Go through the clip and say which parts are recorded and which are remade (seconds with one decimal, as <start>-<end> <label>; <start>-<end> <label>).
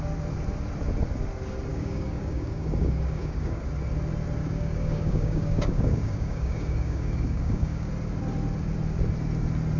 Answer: 0.0-1.7 recorded; 1.7-3.6 remade; 3.6-4.4 recorded; 4.4-7.9 remade; 7.9-9.8 recorded